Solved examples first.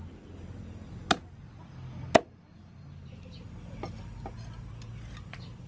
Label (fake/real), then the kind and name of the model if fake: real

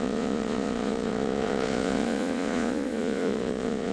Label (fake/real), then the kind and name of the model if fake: fake, vocoder, Vocos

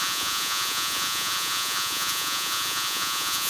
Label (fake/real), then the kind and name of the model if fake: fake, vocoder, Vocos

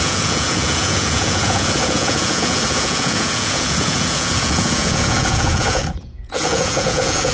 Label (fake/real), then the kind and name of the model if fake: fake, vocoder, Vocos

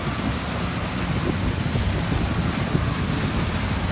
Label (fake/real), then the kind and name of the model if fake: real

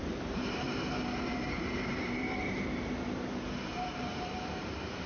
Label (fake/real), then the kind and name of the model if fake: fake, vocoder, BigVGAN v2